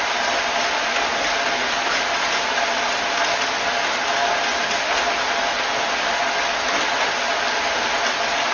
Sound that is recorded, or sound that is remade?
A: recorded